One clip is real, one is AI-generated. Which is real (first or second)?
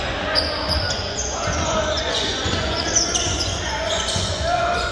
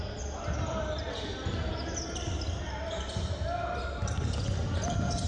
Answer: second